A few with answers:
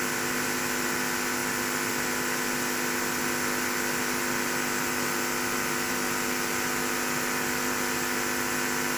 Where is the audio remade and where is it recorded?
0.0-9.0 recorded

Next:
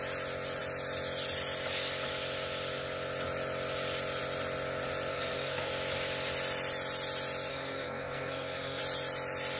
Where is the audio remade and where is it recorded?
0.0-5.1 recorded; 5.1-5.7 remade; 5.7-7.5 recorded; 7.5-8.8 remade; 8.8-9.6 recorded

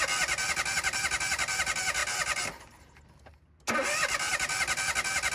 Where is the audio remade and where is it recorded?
0.0-5.3 recorded

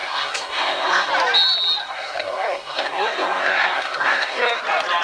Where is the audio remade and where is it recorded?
0.0-1.1 remade; 1.1-1.8 recorded; 1.8-4.6 remade; 4.6-5.0 recorded